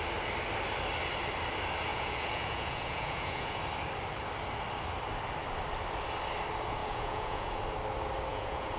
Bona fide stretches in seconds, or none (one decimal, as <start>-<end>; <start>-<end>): 0.0-1.9; 3.6-6.8; 7.6-8.3